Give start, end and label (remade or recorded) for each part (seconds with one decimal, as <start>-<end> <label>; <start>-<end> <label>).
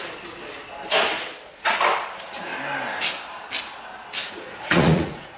0.0-4.2 recorded; 4.2-5.4 remade